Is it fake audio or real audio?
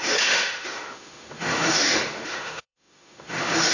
fake